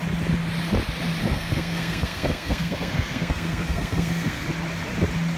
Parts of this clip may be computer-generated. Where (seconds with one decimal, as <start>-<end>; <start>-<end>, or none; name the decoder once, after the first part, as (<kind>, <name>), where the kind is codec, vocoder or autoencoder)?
1.2-4.4 (codec, SNAC)